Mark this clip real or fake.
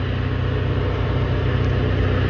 real